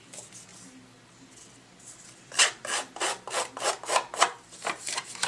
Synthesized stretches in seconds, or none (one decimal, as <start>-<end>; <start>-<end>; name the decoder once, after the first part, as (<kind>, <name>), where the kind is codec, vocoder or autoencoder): 0.0-0.5 (vocoder, BigVGAN v2); 3.7-5.3